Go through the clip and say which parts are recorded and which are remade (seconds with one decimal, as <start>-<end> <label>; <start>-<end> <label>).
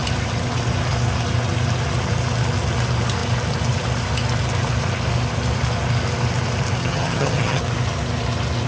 0.0-6.8 recorded; 6.8-7.6 remade; 7.6-8.7 recorded